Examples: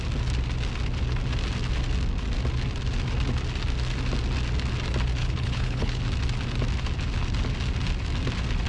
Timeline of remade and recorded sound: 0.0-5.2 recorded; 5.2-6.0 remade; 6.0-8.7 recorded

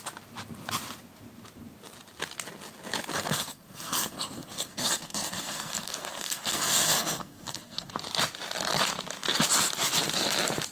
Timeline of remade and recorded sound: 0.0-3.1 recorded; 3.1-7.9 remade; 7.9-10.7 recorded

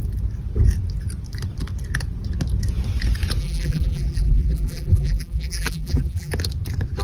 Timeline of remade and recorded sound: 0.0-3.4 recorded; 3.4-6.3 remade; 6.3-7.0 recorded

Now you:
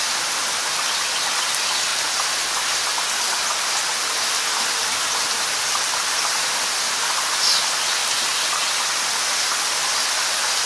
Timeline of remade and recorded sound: 0.0-8.0 recorded; 8.0-8.5 remade; 8.5-10.7 recorded

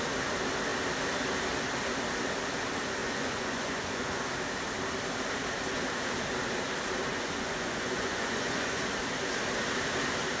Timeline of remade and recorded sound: 0.0-3.0 recorded; 3.0-4.2 remade; 4.2-7.1 recorded; 7.1-8.8 remade; 8.8-10.4 recorded